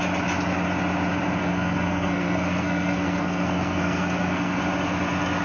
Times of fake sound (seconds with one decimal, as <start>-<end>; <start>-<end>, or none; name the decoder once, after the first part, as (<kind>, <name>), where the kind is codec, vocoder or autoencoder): 1.4-4.6 (codec, SNAC)